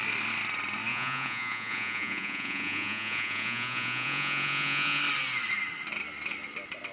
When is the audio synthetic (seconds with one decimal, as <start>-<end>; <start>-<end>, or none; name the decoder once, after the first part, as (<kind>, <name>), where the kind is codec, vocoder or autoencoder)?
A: 0.9-5.0 (vocoder, Vocos)